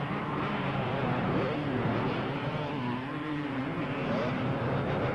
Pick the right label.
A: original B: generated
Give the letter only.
B